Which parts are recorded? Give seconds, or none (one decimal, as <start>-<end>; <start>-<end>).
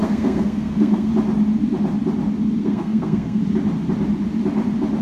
1.1-2.6; 3.4-5.0